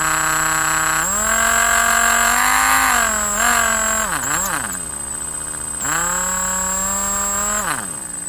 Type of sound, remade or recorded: recorded